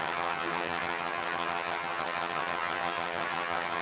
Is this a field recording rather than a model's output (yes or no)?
no